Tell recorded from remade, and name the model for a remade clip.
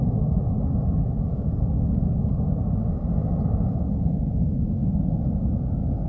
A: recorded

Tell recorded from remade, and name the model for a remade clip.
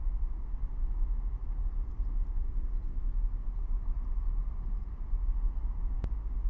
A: recorded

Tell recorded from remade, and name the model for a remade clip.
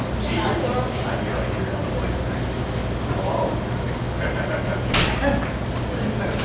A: recorded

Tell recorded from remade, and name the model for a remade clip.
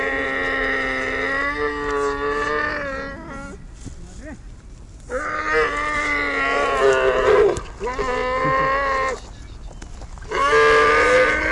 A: recorded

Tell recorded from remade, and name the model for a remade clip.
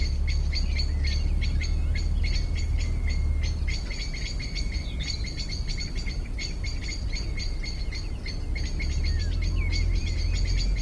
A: recorded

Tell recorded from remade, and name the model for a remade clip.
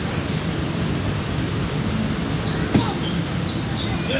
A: recorded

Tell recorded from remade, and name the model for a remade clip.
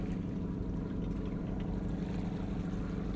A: recorded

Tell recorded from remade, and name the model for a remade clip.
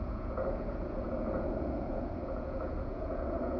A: remade, vocoder, Vocos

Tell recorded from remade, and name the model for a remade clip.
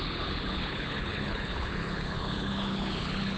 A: remade, codec, HILCodec